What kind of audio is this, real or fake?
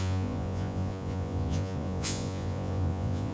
fake